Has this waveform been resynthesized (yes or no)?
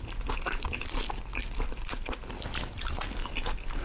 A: no